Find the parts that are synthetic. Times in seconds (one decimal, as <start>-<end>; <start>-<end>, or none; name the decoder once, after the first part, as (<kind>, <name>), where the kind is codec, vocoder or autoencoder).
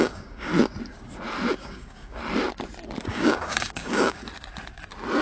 0.0-0.5 (codec, DAC); 1.6-2.2; 3.1-4.2